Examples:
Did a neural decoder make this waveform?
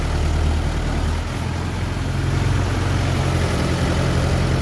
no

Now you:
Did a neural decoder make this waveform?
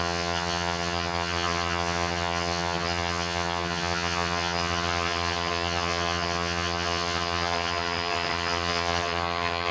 yes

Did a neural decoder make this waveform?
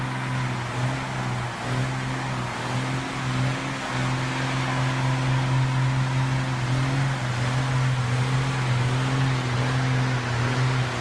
no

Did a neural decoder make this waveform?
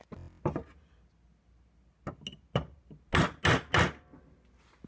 no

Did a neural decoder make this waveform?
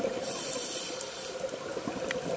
no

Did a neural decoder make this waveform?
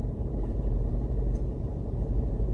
yes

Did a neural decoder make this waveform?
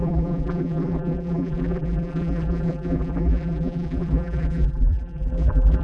yes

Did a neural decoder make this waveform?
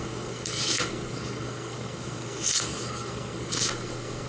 yes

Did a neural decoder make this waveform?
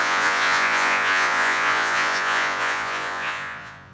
yes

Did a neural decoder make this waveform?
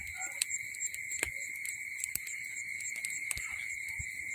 no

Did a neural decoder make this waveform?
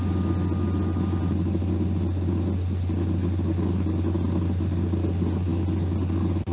no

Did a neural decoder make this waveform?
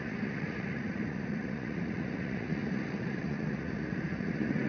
yes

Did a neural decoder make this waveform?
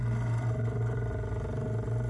no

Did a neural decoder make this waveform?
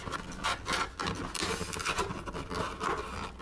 no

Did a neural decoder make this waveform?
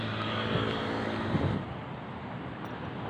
no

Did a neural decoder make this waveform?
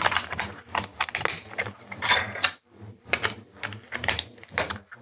yes